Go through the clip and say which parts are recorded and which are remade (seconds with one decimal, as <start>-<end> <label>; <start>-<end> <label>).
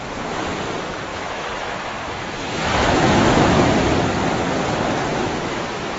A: 0.0-1.1 recorded; 1.1-3.7 remade; 3.7-5.1 recorded; 5.1-6.0 remade